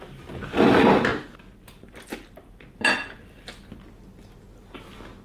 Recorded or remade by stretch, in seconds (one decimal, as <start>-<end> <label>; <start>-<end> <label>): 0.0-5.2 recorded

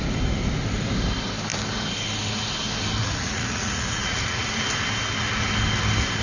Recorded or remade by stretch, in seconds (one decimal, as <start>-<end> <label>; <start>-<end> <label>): 0.0-3.0 recorded; 3.0-4.6 remade; 4.6-6.2 recorded

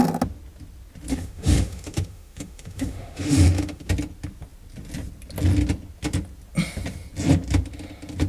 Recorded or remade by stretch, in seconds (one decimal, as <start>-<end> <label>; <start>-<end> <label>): 0.0-1.1 recorded; 1.1-3.9 remade; 3.9-8.3 recorded

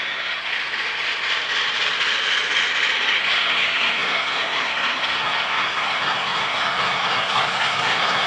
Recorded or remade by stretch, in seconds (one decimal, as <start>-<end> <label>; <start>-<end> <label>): 0.0-0.5 remade; 0.5-3.2 recorded; 3.2-8.3 remade

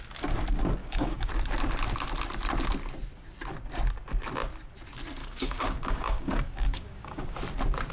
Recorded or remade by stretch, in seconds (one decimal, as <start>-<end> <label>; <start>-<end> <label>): 0.0-0.8 recorded; 0.8-1.3 remade; 1.3-5.2 recorded; 5.2-7.4 remade; 7.4-7.9 recorded

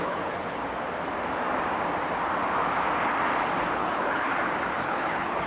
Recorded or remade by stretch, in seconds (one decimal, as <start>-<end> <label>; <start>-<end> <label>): 0.0-0.6 remade; 0.6-3.7 recorded; 3.7-4.3 remade; 4.3-4.8 recorded; 4.8-5.5 remade

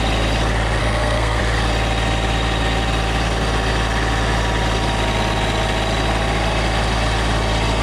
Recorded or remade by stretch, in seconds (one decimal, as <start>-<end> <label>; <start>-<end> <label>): 0.0-0.8 recorded; 0.8-1.4 remade; 1.4-7.8 recorded